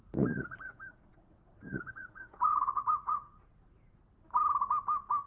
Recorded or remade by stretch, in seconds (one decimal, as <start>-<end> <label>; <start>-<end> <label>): 0.0-4.0 remade; 4.0-5.3 recorded